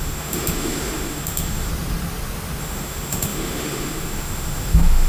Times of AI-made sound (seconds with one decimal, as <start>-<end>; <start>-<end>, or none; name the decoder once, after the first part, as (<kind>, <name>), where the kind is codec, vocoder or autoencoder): 0.0-1.7 (autoencoder, DAC-VAE); 2.6-5.1